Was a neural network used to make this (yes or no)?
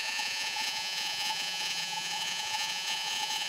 yes